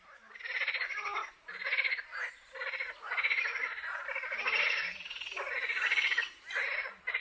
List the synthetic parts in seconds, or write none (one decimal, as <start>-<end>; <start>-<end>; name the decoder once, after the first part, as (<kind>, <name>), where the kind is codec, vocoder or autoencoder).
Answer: none